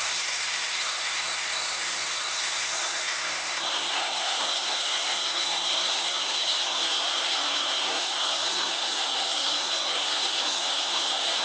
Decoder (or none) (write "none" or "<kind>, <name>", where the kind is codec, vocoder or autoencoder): codec, SNAC